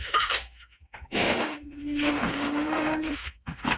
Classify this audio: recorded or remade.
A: remade